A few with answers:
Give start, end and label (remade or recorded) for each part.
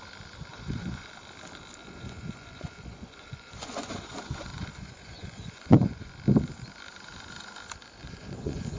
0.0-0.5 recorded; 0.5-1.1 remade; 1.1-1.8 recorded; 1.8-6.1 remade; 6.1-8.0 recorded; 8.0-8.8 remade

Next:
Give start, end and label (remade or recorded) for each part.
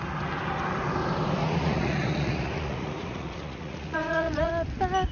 0.0-1.4 recorded; 1.4-4.5 remade; 4.5-5.1 recorded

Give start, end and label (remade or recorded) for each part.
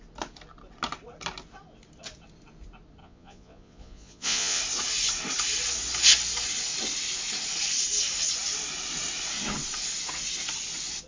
0.0-3.0 recorded; 3.0-4.6 remade; 4.6-11.1 recorded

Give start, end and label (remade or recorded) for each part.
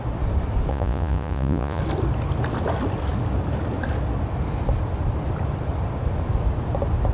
0.0-0.7 recorded; 0.7-1.8 remade; 1.8-7.1 recorded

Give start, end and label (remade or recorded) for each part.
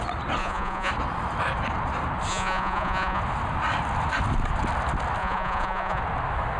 0.0-0.4 recorded; 0.4-0.9 remade; 0.9-2.3 recorded; 2.3-3.2 remade; 3.2-5.2 recorded; 5.2-6.0 remade; 6.0-6.6 recorded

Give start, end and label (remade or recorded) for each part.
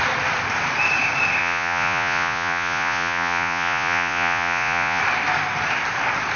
0.0-1.4 recorded; 1.4-5.0 remade; 5.0-6.4 recorded